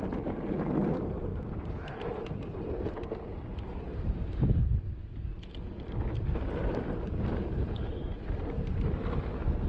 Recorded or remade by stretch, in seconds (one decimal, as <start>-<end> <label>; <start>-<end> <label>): 0.0-1.3 recorded; 1.3-1.8 remade; 1.8-6.6 recorded; 6.6-8.7 remade; 8.7-9.7 recorded